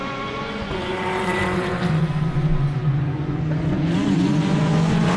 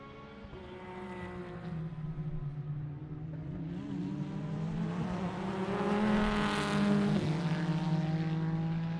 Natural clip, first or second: second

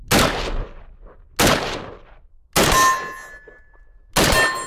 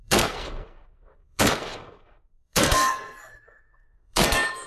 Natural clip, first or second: first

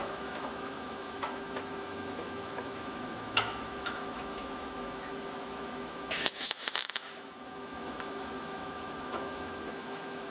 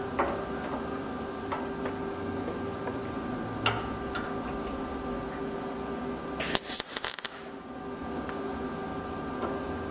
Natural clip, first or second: second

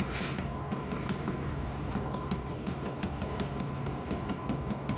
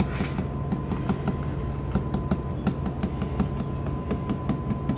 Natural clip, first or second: second